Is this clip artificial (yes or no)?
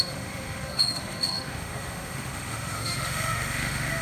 yes